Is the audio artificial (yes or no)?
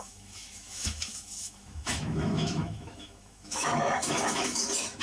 yes